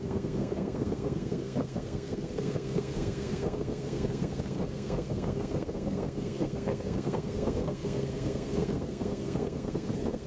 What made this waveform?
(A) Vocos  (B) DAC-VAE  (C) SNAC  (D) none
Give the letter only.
C